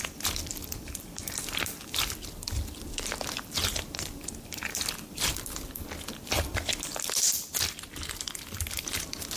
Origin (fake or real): fake